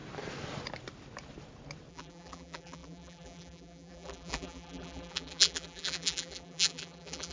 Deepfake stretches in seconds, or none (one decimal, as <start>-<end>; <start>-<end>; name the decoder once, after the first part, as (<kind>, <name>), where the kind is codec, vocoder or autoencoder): 1.9-7.3 (vocoder, BigVGAN v2)